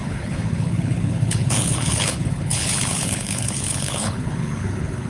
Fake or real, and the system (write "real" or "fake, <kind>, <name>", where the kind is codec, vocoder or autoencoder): fake, codec, HILCodec